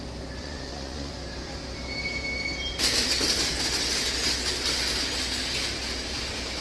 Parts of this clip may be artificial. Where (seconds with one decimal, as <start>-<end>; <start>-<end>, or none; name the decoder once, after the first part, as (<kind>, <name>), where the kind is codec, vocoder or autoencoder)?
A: 0.4-1.1 (vocoder, Vocos)